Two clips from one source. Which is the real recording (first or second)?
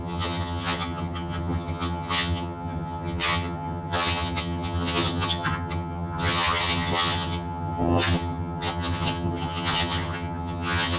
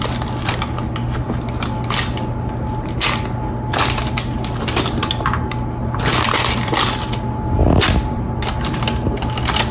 second